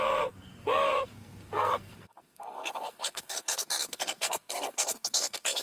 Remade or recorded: remade